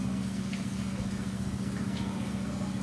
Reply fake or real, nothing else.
fake